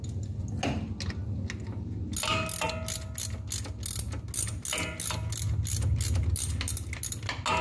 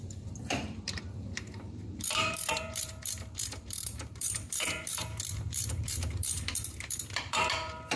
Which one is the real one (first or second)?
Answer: first